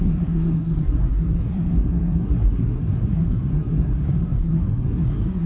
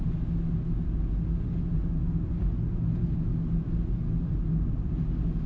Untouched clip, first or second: second